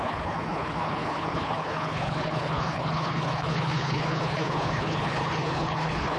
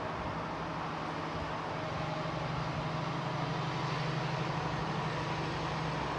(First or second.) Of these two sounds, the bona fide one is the second